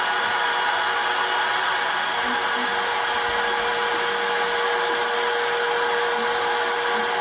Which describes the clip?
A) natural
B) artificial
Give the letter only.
A